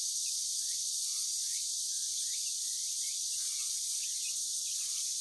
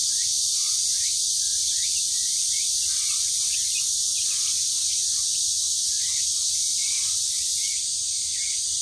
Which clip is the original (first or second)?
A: second